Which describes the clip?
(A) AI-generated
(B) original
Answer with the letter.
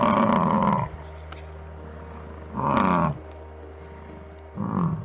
B